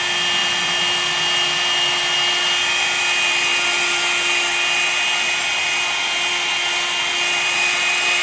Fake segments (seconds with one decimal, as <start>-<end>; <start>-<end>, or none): none